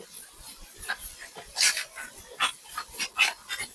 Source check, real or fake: real